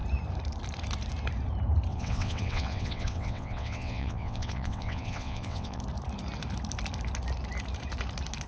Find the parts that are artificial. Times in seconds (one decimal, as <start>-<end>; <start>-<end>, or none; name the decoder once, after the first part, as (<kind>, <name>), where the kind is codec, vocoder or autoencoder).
1.9-5.8 (vocoder, WaveNeXt)